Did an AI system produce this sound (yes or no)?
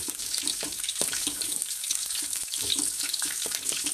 yes